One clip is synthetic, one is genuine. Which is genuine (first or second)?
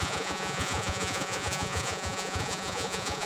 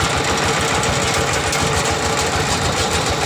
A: second